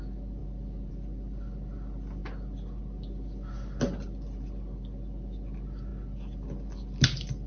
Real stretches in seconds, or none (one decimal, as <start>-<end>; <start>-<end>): 0.0-7.5